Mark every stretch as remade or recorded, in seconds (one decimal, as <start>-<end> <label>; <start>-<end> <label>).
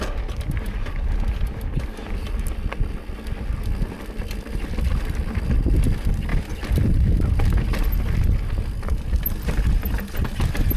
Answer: 0.0-10.8 recorded